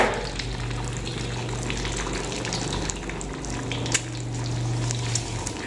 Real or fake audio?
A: real